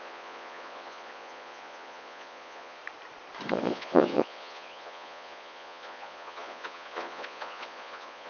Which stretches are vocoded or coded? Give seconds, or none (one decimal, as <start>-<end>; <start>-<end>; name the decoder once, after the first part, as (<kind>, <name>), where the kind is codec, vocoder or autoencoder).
0.0-2.8 (vocoder, Vocos); 3.5-8.3